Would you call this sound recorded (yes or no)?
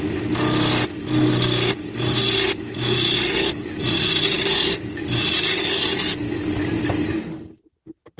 yes